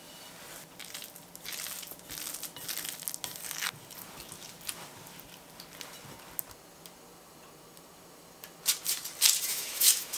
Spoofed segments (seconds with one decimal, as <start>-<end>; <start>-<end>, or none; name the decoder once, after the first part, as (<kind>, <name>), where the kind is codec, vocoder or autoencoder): 9.5-10.2 (autoencoder, DAC-VAE)